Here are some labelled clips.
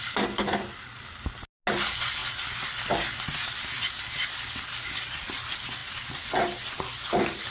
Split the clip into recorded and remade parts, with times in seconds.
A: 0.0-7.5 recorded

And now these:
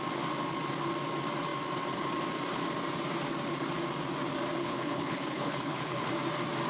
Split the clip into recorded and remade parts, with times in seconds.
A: 0.0-4.6 recorded; 4.6-6.1 remade; 6.1-6.7 recorded